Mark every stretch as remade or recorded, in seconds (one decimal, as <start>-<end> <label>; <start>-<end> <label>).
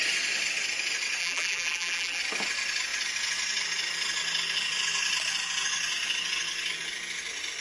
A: 0.0-1.2 recorded; 1.2-2.2 remade; 2.2-7.6 recorded